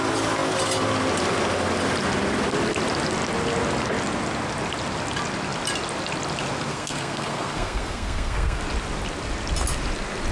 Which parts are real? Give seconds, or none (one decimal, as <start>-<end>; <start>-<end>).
0.0-6.7; 8.6-10.3